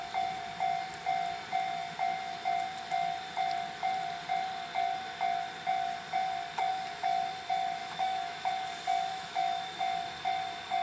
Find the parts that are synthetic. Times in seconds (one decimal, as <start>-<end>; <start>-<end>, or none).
7.8-8.5; 9.1-9.8